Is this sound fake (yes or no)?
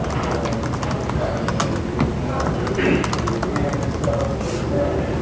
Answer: no